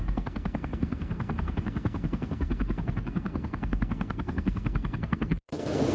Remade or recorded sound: remade